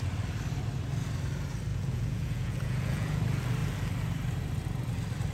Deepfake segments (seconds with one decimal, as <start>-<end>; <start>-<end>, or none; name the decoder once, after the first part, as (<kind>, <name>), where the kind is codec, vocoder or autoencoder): 1.7-3.2 (vocoder, Vocos)